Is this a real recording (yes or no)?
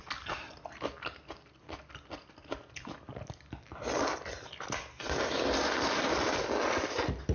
yes